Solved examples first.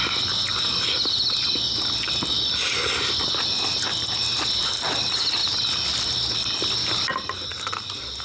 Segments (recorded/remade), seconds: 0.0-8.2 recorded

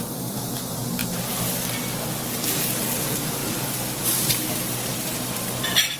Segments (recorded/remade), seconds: 0.0-1.0 remade; 1.0-3.0 recorded; 3.0-3.4 remade; 3.4-4.0 recorded; 4.0-6.0 remade